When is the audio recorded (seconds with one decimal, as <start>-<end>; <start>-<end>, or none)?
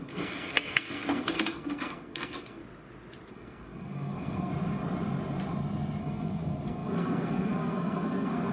2.6-3.3; 4.5-6.0